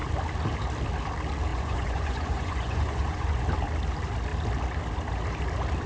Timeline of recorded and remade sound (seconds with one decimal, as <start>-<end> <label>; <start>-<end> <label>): 0.0-1.5 recorded; 1.5-3.4 remade; 3.4-5.9 recorded